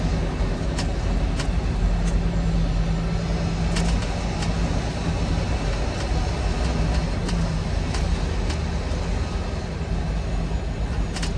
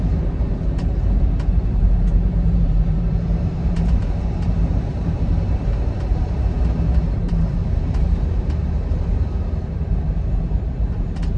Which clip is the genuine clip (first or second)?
first